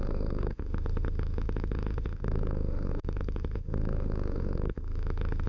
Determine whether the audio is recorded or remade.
remade